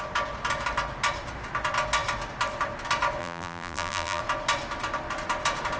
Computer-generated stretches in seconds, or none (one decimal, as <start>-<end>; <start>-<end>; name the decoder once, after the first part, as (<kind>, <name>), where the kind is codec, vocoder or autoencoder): 3.2-4.2 (vocoder, BigVGAN v2)